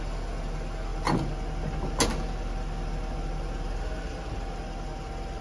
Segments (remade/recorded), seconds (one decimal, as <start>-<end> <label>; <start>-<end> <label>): 0.0-5.4 recorded

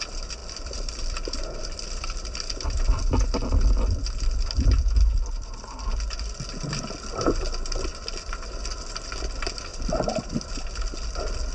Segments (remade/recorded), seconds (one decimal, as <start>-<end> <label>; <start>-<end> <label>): 0.0-0.4 recorded; 0.4-3.5 remade; 3.5-7.9 recorded; 7.9-8.9 remade; 8.9-9.7 recorded; 9.7-10.5 remade; 10.5-11.5 recorded

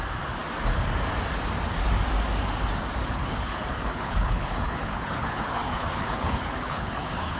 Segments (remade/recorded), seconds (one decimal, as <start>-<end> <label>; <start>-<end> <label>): 0.0-3.0 recorded; 3.0-7.4 remade

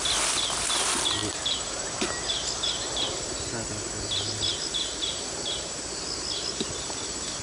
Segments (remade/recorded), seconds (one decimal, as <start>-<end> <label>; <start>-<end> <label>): 0.0-1.2 recorded; 1.2-3.1 remade; 3.1-4.5 recorded; 4.5-5.1 remade; 5.1-7.4 recorded